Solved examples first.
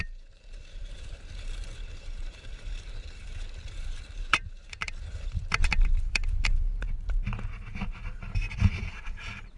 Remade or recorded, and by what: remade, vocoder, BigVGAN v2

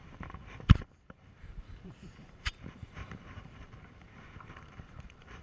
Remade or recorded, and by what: remade, vocoder, BigVGAN v2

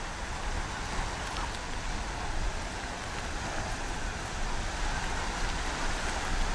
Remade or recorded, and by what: recorded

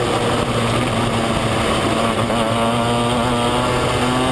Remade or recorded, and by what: recorded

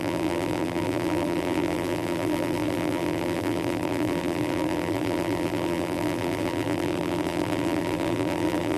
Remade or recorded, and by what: remade, vocoder, BigVGAN v2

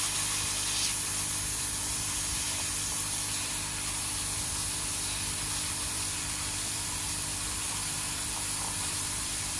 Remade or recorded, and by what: remade, vocoder, BigVGAN v2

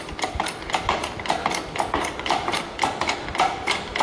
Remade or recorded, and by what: remade, vocoder, BigVGAN v2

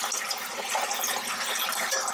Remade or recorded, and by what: recorded